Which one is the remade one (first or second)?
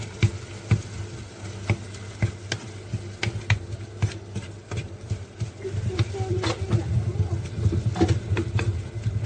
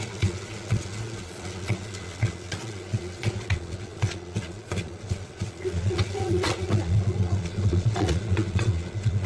second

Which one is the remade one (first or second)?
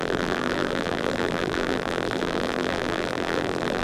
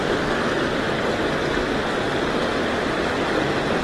first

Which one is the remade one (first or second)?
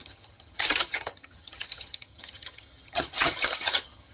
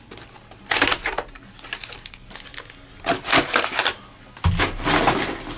first